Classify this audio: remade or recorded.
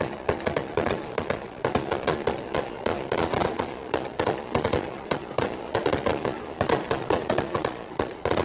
remade